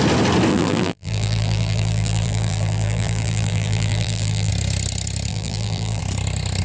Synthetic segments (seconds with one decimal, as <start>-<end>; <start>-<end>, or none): 0.5-4.5; 5.3-6.0